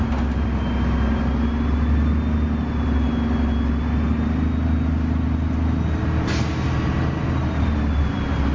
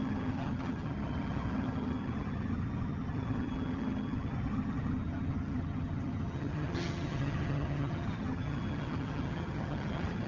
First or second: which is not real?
second